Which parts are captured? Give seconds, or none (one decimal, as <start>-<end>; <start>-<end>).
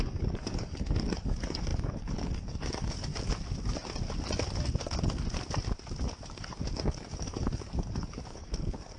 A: 3.1-6.3